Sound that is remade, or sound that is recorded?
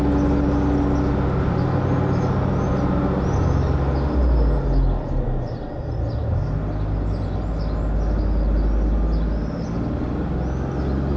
recorded